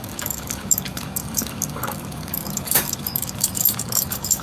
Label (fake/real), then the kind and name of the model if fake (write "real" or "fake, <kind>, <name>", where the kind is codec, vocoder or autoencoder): fake, codec, DAC